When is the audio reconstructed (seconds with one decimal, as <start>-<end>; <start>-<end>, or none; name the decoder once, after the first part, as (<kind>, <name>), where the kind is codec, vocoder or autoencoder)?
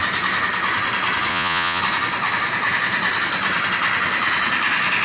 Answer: 1.3-1.8 (vocoder, Vocos)